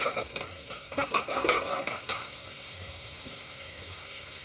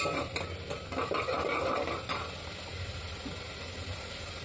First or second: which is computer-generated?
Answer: first